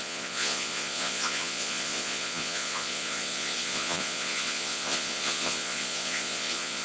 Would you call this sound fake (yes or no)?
yes